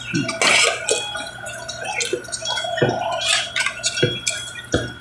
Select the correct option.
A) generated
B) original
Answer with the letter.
B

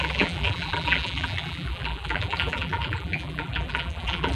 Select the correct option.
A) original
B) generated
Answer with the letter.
B